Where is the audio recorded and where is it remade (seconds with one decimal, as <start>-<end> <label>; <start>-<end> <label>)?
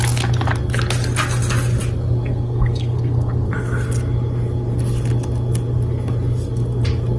0.0-2.3 recorded; 2.3-3.5 remade; 3.5-7.2 recorded